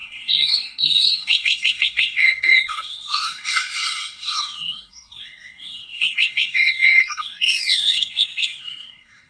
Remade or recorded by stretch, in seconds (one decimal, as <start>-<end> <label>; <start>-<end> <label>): 0.0-9.3 remade